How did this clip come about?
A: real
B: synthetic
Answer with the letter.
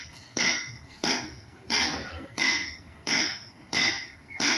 B